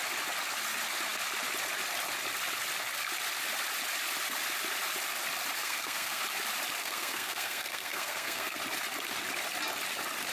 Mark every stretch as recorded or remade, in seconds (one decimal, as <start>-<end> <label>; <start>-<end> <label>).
0.0-5.6 recorded; 5.6-6.2 remade; 6.2-6.8 recorded; 6.8-8.6 remade; 8.6-10.3 recorded